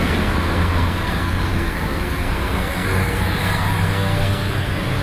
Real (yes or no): no